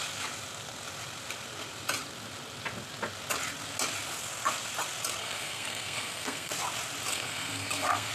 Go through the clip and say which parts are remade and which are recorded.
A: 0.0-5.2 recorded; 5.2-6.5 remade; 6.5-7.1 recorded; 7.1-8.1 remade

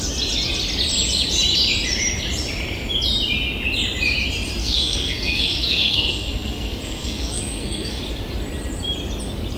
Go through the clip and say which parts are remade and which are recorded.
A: 0.0-4.6 recorded; 4.6-8.0 remade; 8.0-9.6 recorded

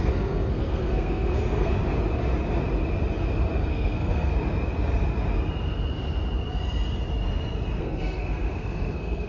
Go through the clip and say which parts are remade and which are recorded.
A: 0.0-1.8 remade; 1.8-3.7 recorded; 3.7-4.3 remade; 4.3-7.8 recorded; 7.8-9.3 remade